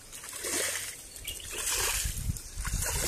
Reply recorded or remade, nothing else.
recorded